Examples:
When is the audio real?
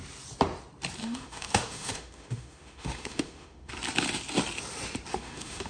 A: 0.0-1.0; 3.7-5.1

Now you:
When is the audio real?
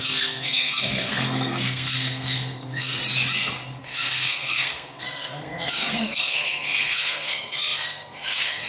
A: 3.0-3.8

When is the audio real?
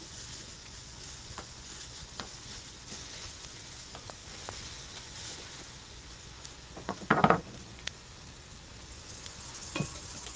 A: 8.1-8.7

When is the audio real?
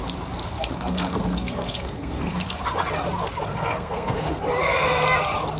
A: 0.0-0.4; 2.6-3.5; 4.4-5.6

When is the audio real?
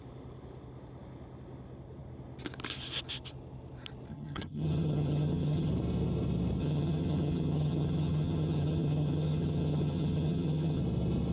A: 0.0-4.1; 5.7-6.6; 10.8-11.3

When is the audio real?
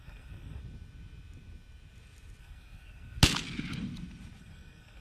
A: 0.6-2.4; 3.2-4.4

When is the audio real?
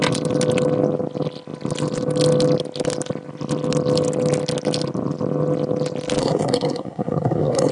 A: 0.0-6.2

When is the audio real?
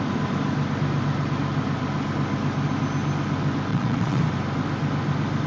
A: 0.0-3.7; 4.2-5.5